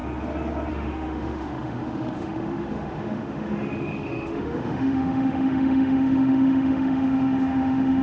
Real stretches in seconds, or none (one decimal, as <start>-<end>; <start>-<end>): 0.0-0.7